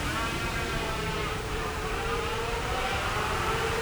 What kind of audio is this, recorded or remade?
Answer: remade